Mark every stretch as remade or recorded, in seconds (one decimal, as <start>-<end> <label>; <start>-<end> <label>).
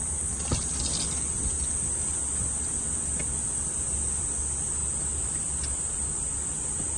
0.0-7.0 recorded